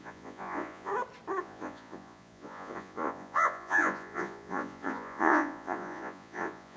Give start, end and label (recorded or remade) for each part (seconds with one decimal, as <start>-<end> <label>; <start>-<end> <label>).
0.0-0.9 remade; 0.9-1.4 recorded; 1.4-6.8 remade